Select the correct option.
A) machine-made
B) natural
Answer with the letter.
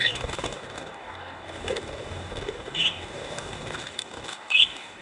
A